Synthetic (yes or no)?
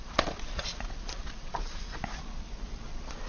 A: yes